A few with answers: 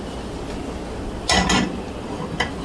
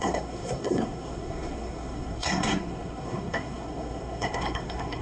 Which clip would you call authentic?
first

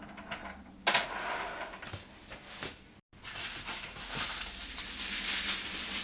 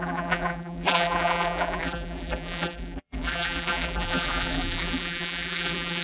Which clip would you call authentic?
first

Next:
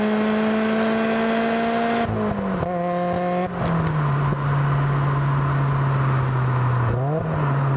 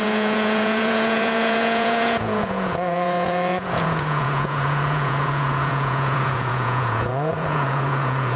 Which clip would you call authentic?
first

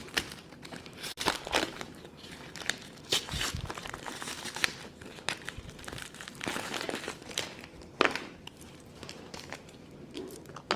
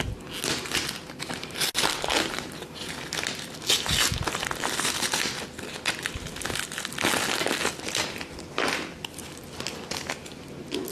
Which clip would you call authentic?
second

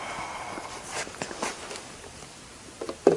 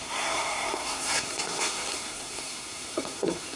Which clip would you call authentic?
first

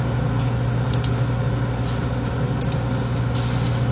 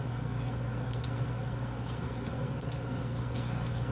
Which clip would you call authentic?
first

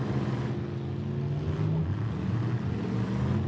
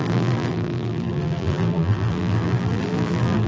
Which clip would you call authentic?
first